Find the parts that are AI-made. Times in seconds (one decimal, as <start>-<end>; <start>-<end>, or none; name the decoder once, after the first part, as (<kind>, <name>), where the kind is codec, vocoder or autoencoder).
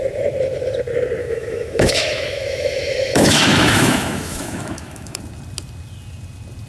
1.2-5.2 (autoencoder, DAC-VAE)